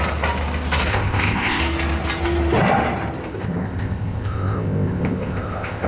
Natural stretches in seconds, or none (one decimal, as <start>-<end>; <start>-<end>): 0.0-0.9; 1.6-3.3